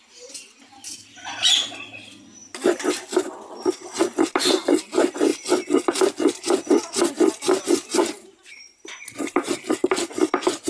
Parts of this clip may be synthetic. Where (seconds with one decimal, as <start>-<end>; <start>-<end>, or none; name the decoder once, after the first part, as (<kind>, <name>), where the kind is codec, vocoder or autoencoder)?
none